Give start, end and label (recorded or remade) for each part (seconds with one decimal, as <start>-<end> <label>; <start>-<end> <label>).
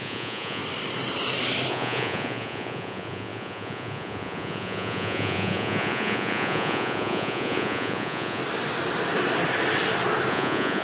0.0-0.6 remade; 0.6-1.7 recorded; 1.7-8.4 remade; 8.4-10.3 recorded; 10.3-10.8 remade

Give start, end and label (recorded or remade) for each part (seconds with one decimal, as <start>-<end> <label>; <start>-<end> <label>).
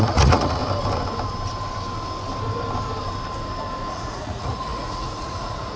0.0-0.6 remade; 0.6-3.9 recorded; 3.9-5.8 remade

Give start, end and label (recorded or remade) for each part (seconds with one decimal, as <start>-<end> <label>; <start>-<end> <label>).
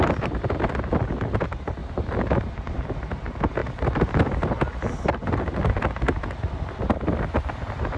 0.0-8.0 recorded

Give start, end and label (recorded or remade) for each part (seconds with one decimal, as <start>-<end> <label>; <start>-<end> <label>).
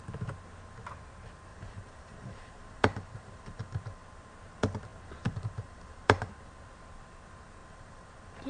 0.0-1.5 recorded; 1.5-4.0 remade; 4.0-4.9 recorded; 4.9-6.3 remade; 6.3-7.6 recorded; 7.6-8.1 remade; 8.1-8.5 recorded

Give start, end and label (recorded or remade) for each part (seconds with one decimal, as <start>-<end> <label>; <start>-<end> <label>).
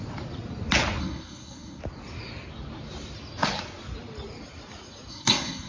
0.0-1.0 recorded; 1.0-1.8 remade; 1.8-5.1 recorded; 5.1-5.7 remade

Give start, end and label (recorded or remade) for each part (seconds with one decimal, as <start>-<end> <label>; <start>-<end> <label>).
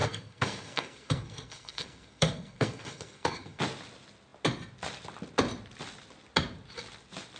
0.0-3.6 remade; 3.6-7.4 recorded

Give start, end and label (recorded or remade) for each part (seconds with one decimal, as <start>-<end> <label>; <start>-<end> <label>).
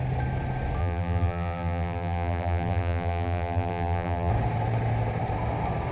0.0-0.8 recorded; 0.8-4.3 remade; 4.3-5.9 recorded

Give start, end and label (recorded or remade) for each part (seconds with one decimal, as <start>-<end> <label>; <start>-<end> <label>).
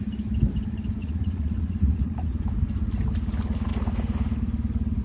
0.0-1.0 recorded; 1.0-2.4 remade; 2.4-5.0 recorded